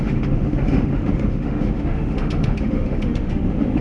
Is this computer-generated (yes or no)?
yes